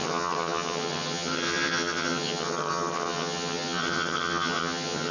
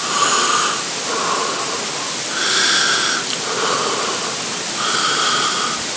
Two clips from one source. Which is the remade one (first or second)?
first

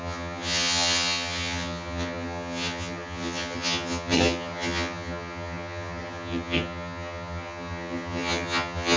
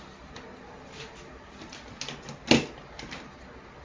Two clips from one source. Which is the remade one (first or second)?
first